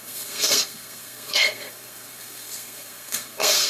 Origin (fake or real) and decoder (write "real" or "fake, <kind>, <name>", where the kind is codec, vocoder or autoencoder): fake, codec, SNAC